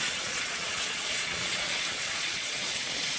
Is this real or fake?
fake